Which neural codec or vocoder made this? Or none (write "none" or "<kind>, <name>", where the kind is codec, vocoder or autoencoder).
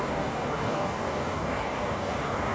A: codec, DAC